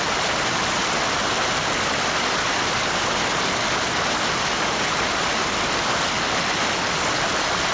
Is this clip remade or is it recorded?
recorded